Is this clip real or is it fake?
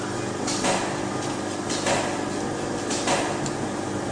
real